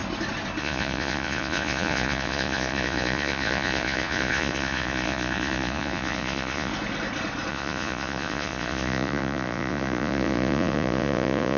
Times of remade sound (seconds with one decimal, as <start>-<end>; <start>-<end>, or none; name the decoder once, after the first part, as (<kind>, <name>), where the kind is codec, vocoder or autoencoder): 0.6-6.7 (vocoder, Vocos); 7.5-11.6